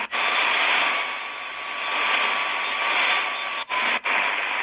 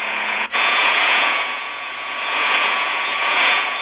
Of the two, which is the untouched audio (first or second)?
first